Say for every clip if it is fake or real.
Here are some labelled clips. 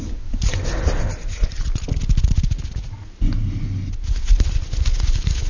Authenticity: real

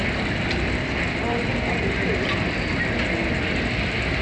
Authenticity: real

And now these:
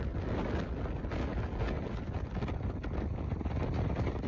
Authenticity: real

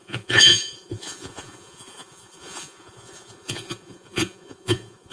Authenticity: fake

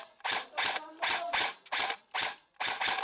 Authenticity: real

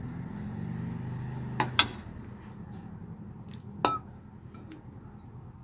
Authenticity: real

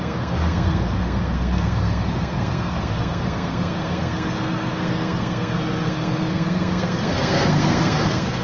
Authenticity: fake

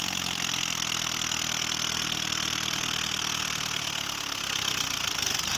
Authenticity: real